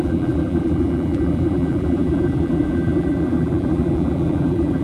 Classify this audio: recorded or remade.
remade